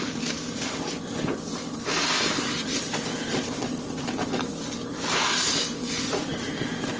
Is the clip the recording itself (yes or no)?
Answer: yes